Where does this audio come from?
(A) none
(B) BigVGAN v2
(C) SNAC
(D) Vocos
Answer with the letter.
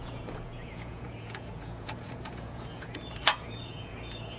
D